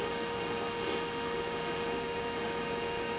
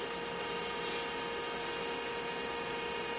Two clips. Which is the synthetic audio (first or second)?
first